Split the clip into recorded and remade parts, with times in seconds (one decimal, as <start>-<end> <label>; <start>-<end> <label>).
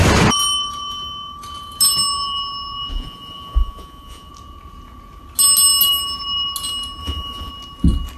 0.0-2.9 recorded; 2.9-4.3 remade; 4.3-7.0 recorded; 7.0-7.5 remade; 7.5-8.2 recorded